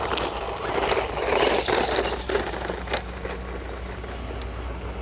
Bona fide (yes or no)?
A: yes